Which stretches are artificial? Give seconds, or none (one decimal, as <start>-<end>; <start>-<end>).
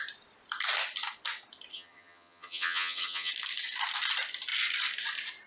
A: 1.7-3.3